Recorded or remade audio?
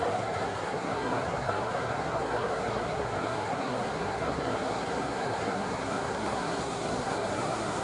remade